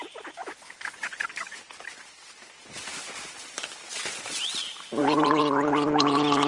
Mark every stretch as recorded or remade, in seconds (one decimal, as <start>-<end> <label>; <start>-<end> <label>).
0.0-2.9 recorded; 2.9-5.4 remade; 5.4-6.5 recorded